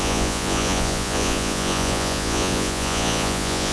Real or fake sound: fake